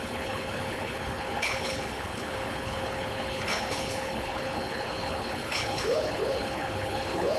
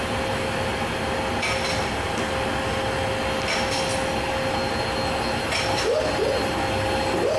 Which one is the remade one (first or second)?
first